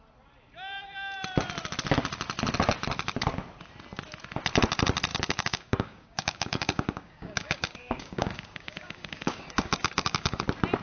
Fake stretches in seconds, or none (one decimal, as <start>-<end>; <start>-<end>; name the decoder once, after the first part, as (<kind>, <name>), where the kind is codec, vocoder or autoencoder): 5.1-10.4 (codec, DAC)

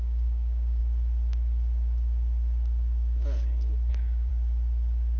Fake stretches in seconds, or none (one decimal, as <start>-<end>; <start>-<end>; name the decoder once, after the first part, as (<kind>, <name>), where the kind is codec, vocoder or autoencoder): 0.0-0.8 (codec, DAC); 3.9-4.3

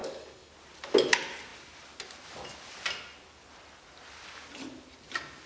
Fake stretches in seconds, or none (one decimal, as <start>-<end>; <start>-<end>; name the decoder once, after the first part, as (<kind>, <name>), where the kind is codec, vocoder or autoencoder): 0.0-0.5 (codec, DAC)

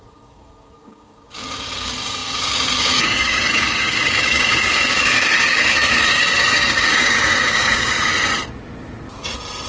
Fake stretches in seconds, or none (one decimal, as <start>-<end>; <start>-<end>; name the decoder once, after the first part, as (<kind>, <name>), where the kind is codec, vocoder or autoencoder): 0.0-8.1 (codec, DAC)